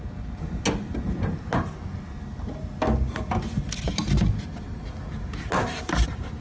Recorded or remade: recorded